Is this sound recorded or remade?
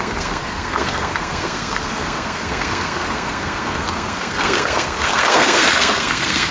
remade